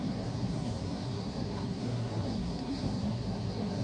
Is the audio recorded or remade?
remade